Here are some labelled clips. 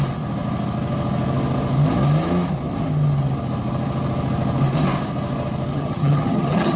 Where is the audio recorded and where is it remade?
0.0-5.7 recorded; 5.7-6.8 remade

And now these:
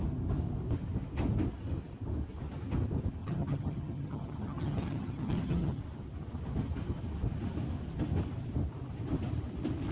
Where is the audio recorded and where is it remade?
0.0-3.2 recorded; 3.2-5.8 remade; 5.8-9.9 recorded

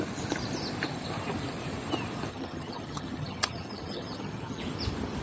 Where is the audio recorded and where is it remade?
0.0-2.3 recorded; 2.3-4.6 remade; 4.6-5.2 recorded

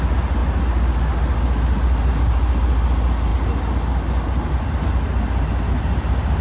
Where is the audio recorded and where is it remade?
0.0-6.4 recorded